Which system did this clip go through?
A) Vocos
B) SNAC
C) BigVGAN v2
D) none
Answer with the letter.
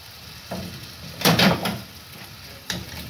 C